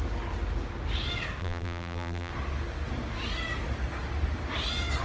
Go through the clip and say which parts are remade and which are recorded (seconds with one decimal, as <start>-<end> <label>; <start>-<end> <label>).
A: 0.0-1.4 recorded; 1.4-2.3 remade; 2.3-5.0 recorded

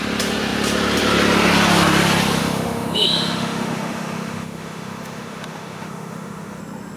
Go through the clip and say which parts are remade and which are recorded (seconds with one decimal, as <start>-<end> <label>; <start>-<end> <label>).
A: 0.0-2.4 recorded; 2.4-6.6 remade; 6.6-7.0 recorded

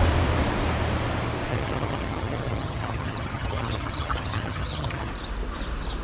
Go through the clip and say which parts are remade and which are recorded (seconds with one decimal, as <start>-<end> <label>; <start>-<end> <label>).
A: 0.0-1.5 recorded; 1.5-5.1 remade; 5.1-6.0 recorded

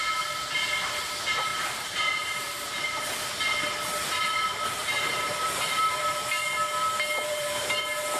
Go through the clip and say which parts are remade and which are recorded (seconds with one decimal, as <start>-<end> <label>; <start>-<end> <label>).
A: 0.0-1.5 recorded; 1.5-3.0 remade; 3.0-4.8 recorded; 4.8-6.1 remade; 6.1-7.3 recorded; 7.3-8.2 remade

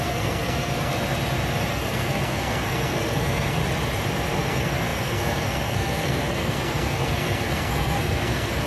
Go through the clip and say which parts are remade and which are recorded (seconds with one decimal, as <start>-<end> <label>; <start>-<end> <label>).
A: 0.0-0.9 remade; 0.9-1.7 recorded; 1.7-3.6 remade; 3.6-4.3 recorded; 4.3-8.7 remade